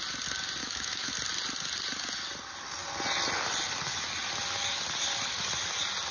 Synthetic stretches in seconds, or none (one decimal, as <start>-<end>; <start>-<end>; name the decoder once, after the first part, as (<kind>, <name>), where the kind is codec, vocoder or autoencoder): 0.6-1.1 (autoencoder, DAC-VAE)